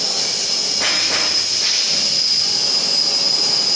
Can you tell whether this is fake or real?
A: real